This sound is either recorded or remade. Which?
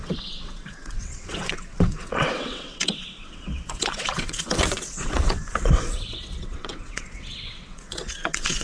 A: remade